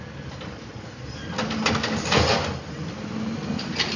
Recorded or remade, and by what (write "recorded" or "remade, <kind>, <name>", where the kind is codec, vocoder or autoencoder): recorded